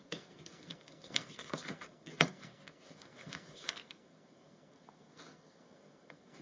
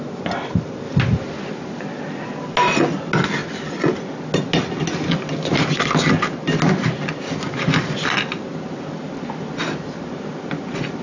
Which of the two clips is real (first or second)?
second